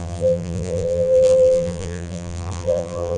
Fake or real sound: fake